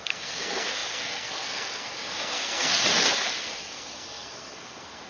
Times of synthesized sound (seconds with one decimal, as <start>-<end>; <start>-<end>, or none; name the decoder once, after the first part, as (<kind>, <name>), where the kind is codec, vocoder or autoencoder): 0.0-5.1 (codec, SNAC)